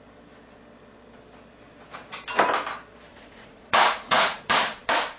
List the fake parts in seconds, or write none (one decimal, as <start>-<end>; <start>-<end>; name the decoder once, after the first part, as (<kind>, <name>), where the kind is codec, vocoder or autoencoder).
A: 3.1-4.5 (vocoder, Vocos)